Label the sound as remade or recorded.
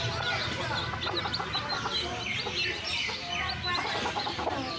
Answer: recorded